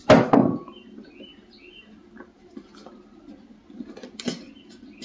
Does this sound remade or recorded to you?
recorded